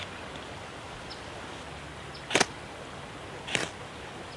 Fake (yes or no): no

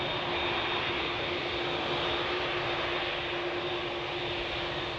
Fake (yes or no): no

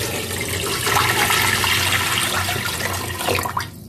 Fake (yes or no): no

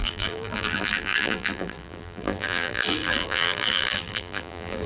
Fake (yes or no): yes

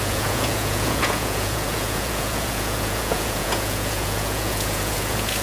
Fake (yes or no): yes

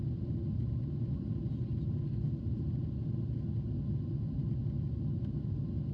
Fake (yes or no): no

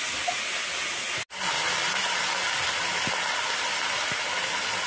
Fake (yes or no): no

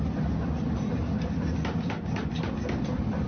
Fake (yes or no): no